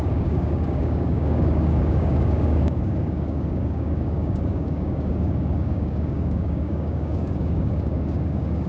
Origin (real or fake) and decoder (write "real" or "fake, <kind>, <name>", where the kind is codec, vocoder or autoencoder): fake, codec, DAC